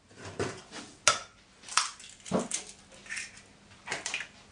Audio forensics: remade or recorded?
recorded